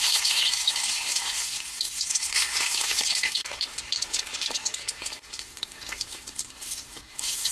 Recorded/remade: remade